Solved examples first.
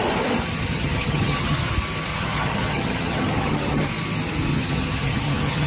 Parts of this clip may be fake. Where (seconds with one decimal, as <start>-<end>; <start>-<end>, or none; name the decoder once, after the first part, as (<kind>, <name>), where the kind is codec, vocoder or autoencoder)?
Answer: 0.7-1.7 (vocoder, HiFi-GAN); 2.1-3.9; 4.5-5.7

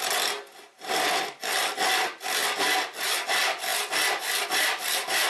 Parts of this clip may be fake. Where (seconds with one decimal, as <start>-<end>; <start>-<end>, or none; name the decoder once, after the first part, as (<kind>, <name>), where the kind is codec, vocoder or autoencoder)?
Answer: none

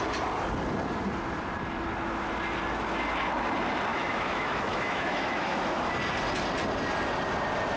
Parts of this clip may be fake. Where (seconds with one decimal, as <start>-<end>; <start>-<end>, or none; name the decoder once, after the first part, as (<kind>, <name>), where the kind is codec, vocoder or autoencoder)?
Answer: 3.9-5.9 (autoencoder, DAC-VAE)

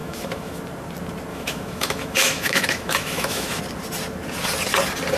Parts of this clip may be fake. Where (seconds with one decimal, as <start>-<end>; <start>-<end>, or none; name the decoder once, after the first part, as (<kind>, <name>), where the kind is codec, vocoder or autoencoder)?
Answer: 0.0-0.6 (autoencoder, DAC-VAE); 1.3-3.6

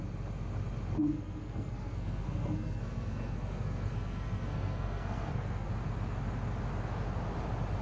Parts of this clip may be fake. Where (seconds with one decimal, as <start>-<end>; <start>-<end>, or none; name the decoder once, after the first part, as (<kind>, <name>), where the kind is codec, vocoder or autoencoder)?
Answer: 1.0-5.7 (codec, SNAC)

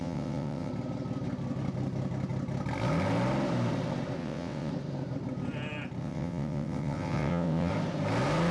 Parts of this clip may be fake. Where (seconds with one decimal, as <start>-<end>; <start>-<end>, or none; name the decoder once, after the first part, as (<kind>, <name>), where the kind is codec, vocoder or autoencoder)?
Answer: 0.0-0.7 (vocoder, WaveNeXt); 4.2-4.7; 6.0-7.7

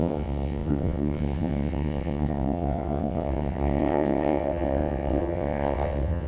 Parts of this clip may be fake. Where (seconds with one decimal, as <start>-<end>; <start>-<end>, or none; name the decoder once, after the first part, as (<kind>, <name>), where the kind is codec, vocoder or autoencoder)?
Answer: 0.0-6.3 (vocoder, WaveNeXt)

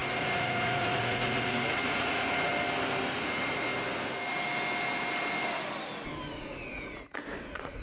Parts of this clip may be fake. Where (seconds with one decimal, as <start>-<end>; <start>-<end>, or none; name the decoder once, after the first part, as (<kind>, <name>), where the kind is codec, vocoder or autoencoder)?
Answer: 0.0-2.5 (vocoder, Vocos); 3.1-3.7; 6.3-7.8